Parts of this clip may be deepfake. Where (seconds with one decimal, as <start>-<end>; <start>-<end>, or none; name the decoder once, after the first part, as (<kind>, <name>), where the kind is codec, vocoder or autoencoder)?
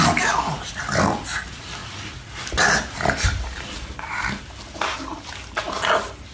none